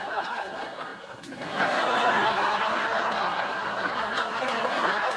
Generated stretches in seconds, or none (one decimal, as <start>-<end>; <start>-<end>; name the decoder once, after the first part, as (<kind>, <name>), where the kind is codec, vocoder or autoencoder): 0.0-5.2 (codec, SNAC)